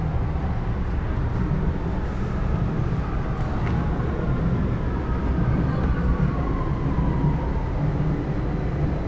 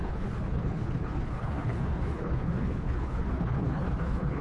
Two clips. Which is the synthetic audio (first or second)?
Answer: second